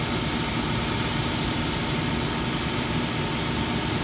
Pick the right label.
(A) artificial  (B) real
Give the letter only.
B